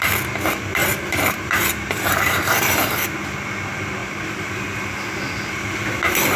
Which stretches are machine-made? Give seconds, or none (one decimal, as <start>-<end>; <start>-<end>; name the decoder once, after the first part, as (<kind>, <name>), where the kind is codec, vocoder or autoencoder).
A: 0.8-2.9 (vocoder, BigVGAN v2)